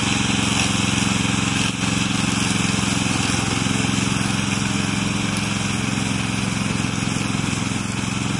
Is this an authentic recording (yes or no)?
yes